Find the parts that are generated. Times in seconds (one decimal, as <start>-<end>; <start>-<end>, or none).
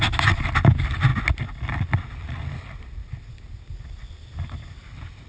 none